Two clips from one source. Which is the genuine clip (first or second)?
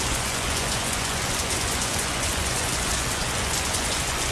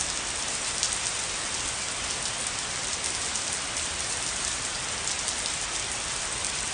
second